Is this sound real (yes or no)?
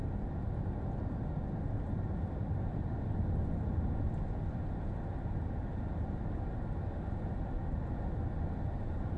yes